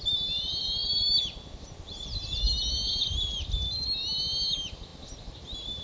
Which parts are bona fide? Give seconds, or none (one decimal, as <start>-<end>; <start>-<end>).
0.0-5.8